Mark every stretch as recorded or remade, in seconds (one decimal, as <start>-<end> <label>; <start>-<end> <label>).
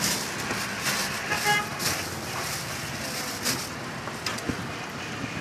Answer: 0.0-5.4 recorded